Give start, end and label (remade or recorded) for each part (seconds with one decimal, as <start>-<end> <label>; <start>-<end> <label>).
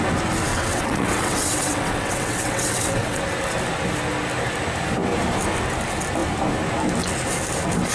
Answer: 0.0-0.5 recorded; 0.5-3.2 remade; 3.2-7.9 recorded